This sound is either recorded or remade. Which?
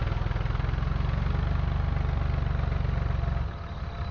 recorded